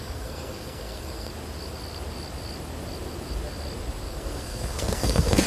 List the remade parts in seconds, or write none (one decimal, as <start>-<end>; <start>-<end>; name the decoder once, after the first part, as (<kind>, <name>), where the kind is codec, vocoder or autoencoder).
0.0-1.3 (codec, SNAC); 4.1-5.5

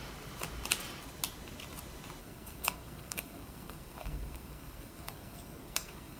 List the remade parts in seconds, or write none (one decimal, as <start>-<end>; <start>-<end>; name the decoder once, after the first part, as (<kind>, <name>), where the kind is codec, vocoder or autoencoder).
2.2-6.2 (codec, SNAC)

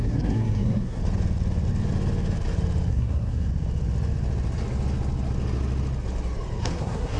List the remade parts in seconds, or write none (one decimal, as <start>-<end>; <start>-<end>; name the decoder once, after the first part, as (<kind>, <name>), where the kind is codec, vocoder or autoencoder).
0.0-1.0 (codec, SNAC); 2.9-3.5; 6.6-7.2

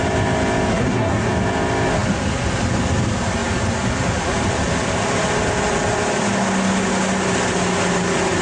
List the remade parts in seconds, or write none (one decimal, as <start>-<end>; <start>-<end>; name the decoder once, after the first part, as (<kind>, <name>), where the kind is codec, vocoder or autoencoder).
0.7-1.3 (codec, SNAC)